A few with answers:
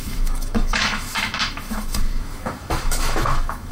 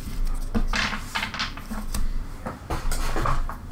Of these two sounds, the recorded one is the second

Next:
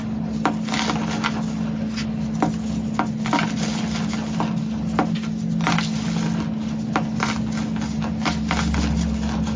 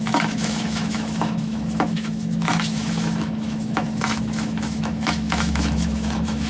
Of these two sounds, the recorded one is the first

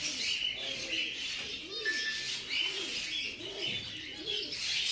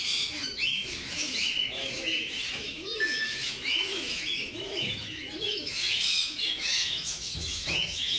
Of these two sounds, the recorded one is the first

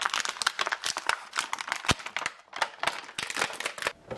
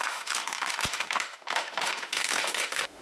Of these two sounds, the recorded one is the first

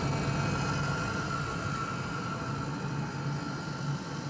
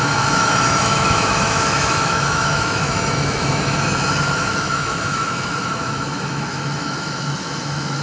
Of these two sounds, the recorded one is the first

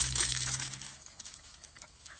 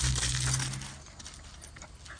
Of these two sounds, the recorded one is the second